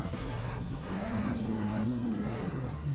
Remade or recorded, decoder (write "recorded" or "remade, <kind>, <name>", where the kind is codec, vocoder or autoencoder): remade, codec, SNAC